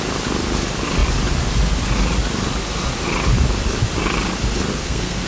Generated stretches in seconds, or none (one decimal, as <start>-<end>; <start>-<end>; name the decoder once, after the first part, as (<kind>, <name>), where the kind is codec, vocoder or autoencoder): 4.7-5.3 (codec, SNAC)